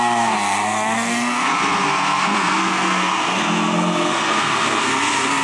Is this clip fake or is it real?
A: fake